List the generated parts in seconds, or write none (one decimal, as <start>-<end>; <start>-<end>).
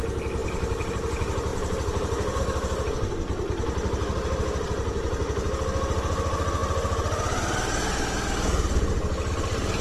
0.4-0.9; 1.5-2.4